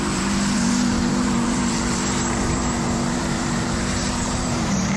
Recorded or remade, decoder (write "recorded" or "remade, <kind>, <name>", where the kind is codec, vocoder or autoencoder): remade, vocoder, BigVGAN v2